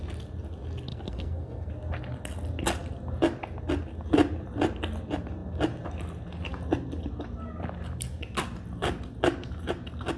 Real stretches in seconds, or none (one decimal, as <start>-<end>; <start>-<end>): 0.0-0.9; 1.7-10.2